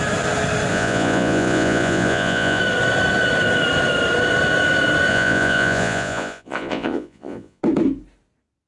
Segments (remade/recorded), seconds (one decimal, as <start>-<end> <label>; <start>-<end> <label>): 0.0-0.7 recorded; 0.7-2.6 remade; 2.6-5.1 recorded; 5.1-7.6 remade; 7.6-8.7 recorded